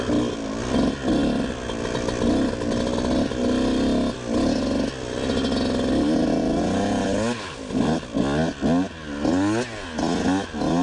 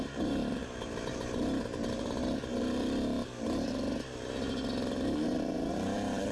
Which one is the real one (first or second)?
first